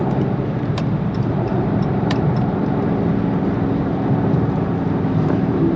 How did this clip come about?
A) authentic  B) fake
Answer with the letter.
B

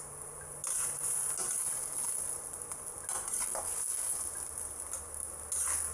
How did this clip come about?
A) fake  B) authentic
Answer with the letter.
B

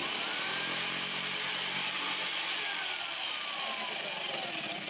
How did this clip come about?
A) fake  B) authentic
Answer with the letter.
B